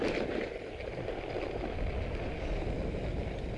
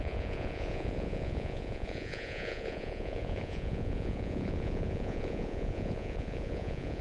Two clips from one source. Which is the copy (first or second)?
second